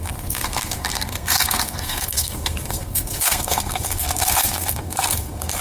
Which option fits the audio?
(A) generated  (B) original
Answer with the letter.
A